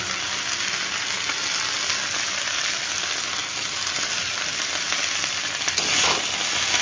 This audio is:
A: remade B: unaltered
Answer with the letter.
B